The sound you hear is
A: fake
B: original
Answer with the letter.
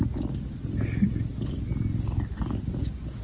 B